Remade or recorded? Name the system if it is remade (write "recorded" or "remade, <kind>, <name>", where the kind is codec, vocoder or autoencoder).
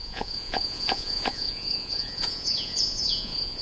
remade, vocoder, Vocos